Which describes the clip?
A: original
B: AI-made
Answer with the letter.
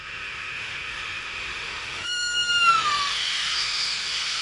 B